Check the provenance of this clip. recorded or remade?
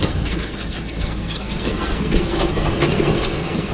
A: remade